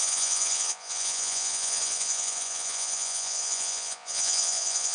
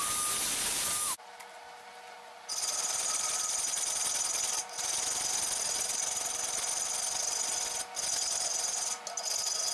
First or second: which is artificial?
first